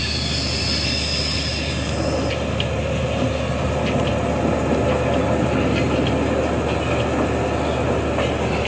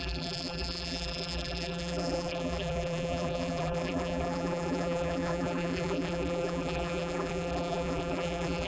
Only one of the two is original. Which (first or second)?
first